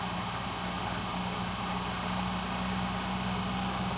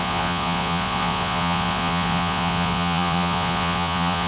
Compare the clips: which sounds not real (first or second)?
second